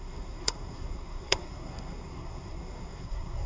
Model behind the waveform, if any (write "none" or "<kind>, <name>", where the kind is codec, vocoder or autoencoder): codec, SNAC